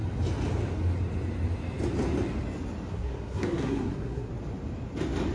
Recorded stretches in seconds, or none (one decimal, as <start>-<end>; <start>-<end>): 0.0-2.9; 4.3-5.3